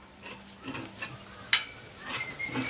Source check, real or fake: real